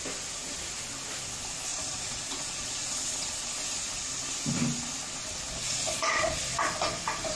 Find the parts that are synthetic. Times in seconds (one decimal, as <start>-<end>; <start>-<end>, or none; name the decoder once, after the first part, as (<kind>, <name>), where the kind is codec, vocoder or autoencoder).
1.7-3.5 (vocoder, Vocos); 5.6-6.4